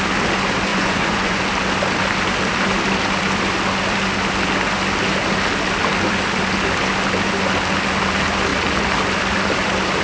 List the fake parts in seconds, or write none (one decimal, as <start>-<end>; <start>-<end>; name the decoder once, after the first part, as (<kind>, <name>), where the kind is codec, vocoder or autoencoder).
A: 0.7-1.4 (vocoder, Vocos)